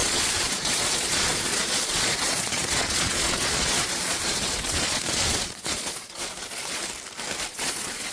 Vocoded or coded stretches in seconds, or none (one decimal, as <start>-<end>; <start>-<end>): 0.0-6.8; 7.5-8.1